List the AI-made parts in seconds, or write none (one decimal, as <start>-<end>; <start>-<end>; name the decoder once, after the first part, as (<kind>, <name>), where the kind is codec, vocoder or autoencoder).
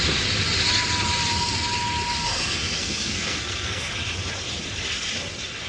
2.2-3.9 (codec, SNAC)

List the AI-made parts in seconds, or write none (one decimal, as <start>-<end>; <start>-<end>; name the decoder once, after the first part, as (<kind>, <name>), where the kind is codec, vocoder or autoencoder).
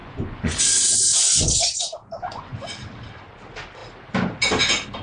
0.0-0.6 (vocoder, Vocos); 1.1-2.7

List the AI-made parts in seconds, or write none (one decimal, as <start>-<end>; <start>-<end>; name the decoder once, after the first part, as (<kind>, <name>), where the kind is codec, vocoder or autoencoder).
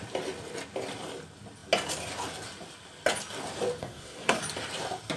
3.8-4.4 (codec, SNAC)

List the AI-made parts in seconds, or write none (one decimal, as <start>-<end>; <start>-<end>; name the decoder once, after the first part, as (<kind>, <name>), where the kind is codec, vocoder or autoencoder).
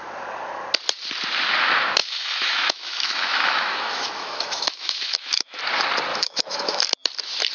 2.0-5.6 (autoencoder, DAC-VAE); 6.1-6.8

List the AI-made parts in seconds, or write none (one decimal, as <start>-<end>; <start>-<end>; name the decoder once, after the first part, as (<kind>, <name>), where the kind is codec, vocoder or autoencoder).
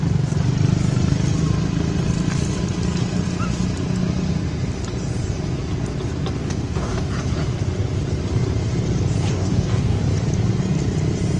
6.4-7.1 (codec, DAC); 9.3-10.0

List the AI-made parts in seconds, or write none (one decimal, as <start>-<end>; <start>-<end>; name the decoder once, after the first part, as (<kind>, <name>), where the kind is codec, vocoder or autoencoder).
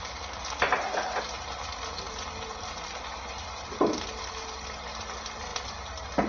none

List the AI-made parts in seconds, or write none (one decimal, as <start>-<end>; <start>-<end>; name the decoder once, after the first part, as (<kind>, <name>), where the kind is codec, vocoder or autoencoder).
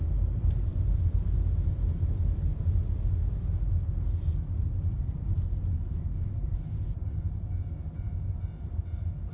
none